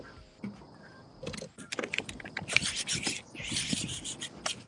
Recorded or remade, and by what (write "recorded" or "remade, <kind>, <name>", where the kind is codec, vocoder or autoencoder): recorded